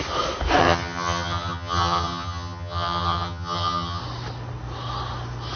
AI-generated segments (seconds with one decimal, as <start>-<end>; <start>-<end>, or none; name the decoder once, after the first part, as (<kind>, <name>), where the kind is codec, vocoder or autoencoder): 0.6-4.0 (vocoder, HiFi-GAN)